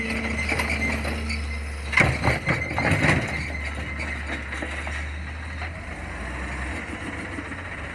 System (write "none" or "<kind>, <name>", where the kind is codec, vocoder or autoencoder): none